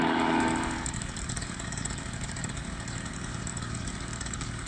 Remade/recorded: remade